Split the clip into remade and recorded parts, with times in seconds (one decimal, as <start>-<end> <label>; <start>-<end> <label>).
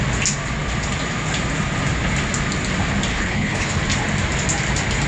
0.0-3.1 recorded; 3.1-3.8 remade; 3.8-5.1 recorded